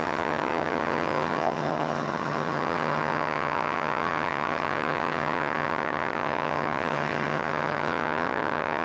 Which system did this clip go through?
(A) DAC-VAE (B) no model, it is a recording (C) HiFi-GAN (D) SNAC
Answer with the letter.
C